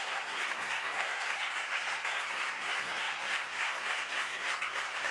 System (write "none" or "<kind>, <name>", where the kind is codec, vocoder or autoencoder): codec, SNAC